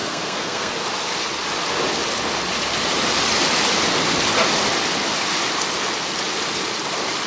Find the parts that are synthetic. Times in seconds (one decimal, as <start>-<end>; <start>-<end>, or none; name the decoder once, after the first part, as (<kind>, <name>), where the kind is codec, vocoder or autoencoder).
0.0-0.7 (codec, SNAC)